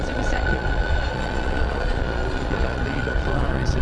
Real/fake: fake